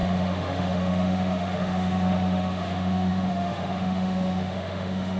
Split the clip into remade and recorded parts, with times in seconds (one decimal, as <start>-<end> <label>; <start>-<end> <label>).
0.0-5.2 remade